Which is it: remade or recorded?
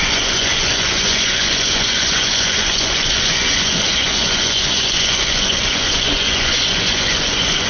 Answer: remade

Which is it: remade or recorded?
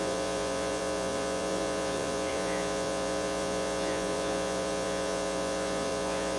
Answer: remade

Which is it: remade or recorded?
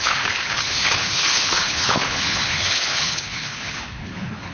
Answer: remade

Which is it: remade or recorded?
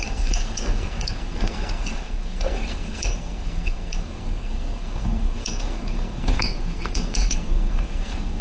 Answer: remade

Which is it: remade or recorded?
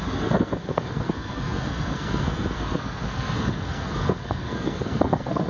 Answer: remade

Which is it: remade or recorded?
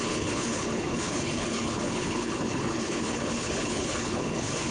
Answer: remade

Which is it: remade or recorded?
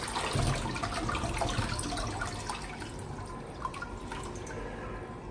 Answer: recorded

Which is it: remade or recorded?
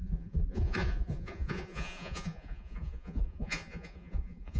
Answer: remade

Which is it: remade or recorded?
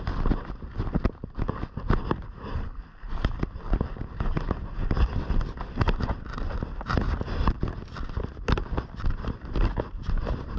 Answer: recorded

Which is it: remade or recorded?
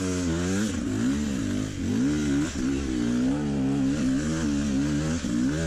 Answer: recorded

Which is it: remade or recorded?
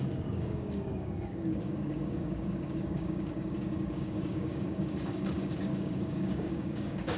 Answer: remade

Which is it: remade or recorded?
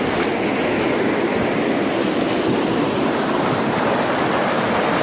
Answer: recorded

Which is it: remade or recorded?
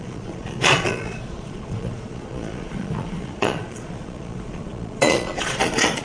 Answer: remade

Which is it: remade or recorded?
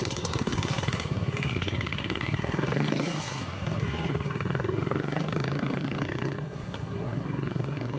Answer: remade